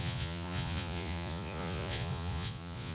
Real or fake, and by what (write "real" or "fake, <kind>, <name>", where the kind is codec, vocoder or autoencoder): fake, vocoder, Vocos